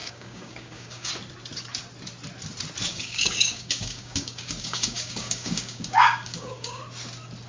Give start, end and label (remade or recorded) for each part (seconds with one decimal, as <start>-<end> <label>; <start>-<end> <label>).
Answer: 0.0-1.1 remade; 1.1-2.9 recorded; 2.9-6.8 remade; 6.8-7.5 recorded